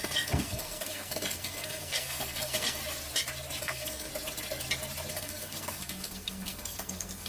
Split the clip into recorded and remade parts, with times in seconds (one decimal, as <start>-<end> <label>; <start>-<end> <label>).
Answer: 0.0-2.8 remade; 2.8-3.6 recorded; 3.6-4.1 remade; 4.1-5.1 recorded; 5.1-7.3 remade